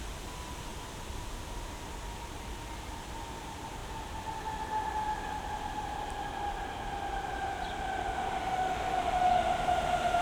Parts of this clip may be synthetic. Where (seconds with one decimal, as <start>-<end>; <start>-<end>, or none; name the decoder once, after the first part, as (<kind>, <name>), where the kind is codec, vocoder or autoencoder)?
8.4-9.3 (autoencoder, DAC-VAE)